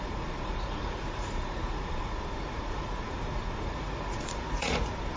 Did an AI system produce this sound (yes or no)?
yes